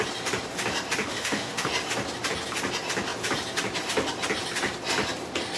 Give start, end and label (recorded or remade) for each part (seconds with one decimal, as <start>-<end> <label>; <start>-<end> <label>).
0.0-1.0 recorded; 1.0-1.7 remade; 1.7-5.6 recorded